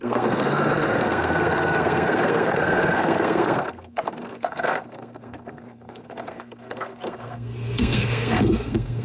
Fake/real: fake